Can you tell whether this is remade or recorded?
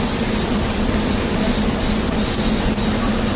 recorded